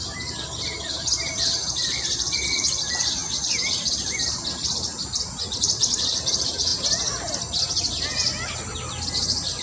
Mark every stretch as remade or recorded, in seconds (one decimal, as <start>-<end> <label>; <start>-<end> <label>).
0.0-4.9 remade; 4.9-5.5 recorded; 5.5-6.7 remade; 6.7-9.1 recorded; 9.1-9.6 remade